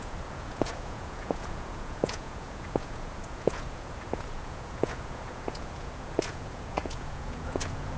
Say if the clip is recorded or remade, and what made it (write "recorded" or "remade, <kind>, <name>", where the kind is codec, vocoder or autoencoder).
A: remade, vocoder, Vocos